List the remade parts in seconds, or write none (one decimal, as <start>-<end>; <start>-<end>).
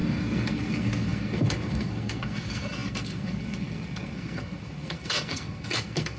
0.0-6.2